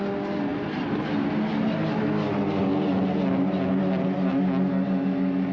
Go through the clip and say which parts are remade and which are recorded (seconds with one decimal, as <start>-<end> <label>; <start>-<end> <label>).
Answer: 0.0-5.5 recorded